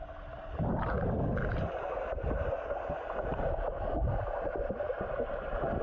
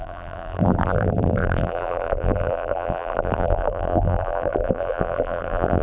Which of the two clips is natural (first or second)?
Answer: first